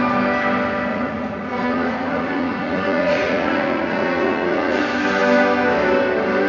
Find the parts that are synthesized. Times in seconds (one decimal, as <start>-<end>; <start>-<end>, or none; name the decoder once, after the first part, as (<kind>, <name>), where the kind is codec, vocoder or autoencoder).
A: 0.9-4.8 (vocoder, Vocos)